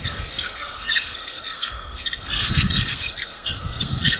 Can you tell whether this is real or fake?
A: fake